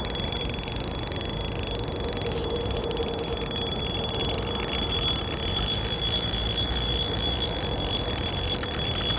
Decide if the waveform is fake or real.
real